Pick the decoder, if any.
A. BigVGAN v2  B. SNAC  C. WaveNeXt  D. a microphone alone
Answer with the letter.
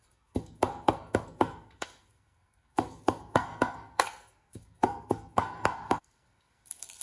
B